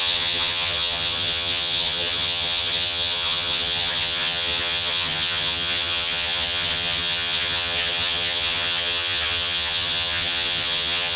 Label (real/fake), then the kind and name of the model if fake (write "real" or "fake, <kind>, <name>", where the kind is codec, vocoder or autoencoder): fake, vocoder, HiFi-GAN